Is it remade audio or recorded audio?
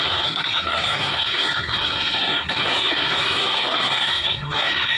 remade